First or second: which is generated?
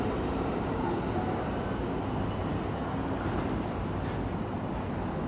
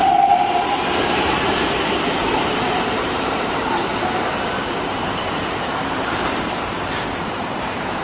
second